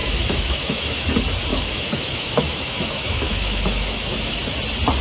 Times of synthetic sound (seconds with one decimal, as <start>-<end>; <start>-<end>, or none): 0.0-1.1; 1.5-4.5

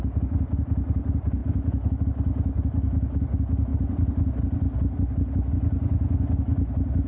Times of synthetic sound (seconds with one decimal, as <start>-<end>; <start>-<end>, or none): none

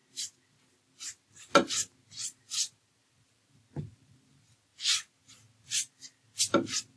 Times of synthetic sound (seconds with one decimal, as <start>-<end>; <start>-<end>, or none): 2.8-4.7; 6.4-7.0

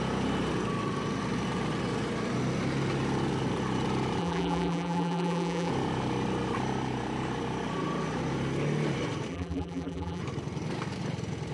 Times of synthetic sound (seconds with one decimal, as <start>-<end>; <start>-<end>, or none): 4.2-5.7; 9.3-10.2

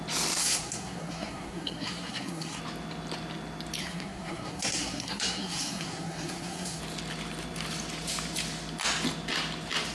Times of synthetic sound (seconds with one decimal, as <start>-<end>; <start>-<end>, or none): 0.4-2.6; 3.8-6.8

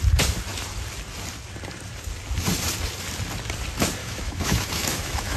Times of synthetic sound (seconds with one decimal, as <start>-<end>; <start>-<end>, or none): 4.0-5.4

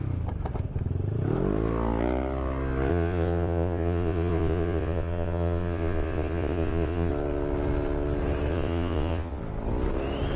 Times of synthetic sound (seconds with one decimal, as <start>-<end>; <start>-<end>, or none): 2.9-7.1; 8.5-9.4

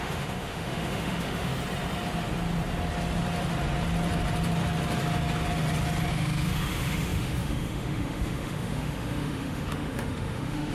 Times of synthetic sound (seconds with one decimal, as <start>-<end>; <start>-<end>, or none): 0.0-1.5; 6.1-10.7